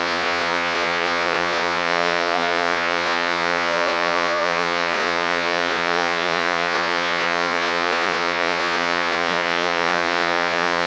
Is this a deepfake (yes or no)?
yes